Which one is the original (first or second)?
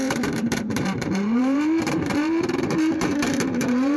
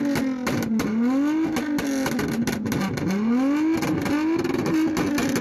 second